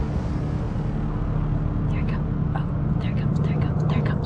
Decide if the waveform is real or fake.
real